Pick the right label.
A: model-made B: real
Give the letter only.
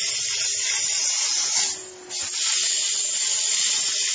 B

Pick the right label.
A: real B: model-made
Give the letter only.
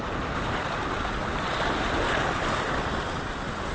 A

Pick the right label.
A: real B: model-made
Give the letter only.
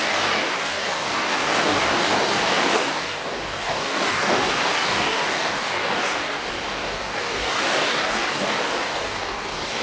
B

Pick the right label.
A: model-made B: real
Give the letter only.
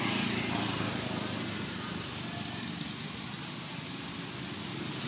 B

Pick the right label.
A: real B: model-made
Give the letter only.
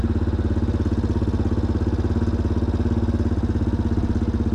A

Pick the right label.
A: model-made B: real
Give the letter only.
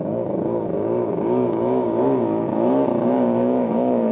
A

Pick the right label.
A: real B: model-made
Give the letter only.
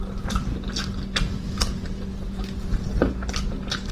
A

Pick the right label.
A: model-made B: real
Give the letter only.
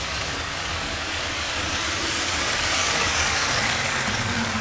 A